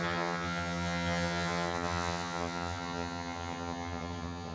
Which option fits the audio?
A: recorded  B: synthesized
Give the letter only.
B